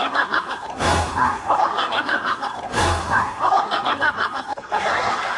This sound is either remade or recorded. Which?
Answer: remade